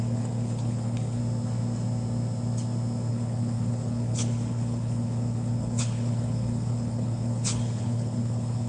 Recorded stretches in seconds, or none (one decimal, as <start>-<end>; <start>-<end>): 1.2-3.1